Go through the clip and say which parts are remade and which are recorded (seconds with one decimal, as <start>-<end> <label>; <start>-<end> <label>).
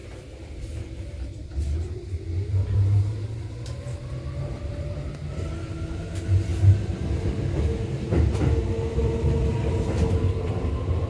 0.0-3.0 remade; 3.0-9.0 recorded; 9.0-9.5 remade; 9.5-11.1 recorded